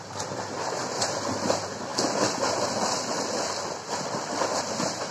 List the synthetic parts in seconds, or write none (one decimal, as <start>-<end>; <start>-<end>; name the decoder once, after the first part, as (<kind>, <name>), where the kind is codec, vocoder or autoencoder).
none

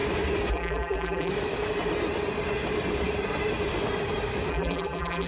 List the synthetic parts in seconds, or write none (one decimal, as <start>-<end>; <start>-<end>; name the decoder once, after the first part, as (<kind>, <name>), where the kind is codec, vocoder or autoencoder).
0.5-1.3 (vocoder, BigVGAN v2); 4.5-5.3